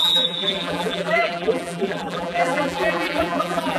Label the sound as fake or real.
fake